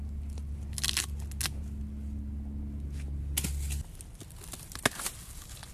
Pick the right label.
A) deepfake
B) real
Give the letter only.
B